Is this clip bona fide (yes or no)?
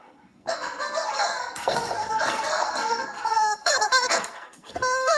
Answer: no